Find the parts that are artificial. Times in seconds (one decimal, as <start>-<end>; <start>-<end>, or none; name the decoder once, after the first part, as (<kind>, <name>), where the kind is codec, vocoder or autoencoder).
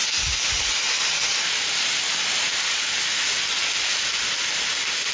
none